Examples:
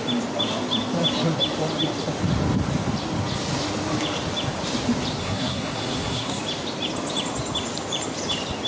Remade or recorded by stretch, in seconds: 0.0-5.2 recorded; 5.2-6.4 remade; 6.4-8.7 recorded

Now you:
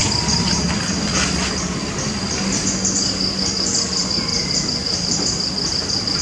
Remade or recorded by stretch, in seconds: 0.0-0.9 remade; 0.9-4.3 recorded; 4.3-5.7 remade; 5.7-6.2 recorded

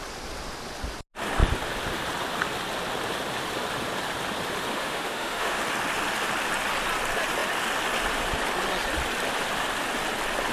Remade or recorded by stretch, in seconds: 0.0-4.7 recorded; 4.7-5.6 remade; 5.6-10.5 recorded

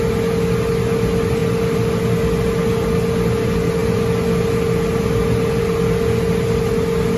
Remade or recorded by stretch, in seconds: 0.0-7.2 recorded

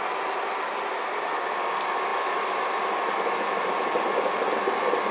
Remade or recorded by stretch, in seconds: 0.0-5.1 recorded

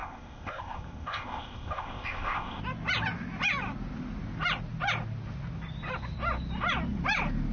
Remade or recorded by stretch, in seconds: 0.0-2.6 remade; 2.6-7.5 recorded

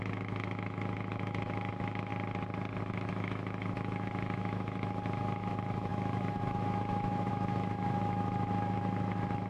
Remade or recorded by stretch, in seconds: 0.0-2.1 remade; 2.1-2.8 recorded; 2.8-9.5 remade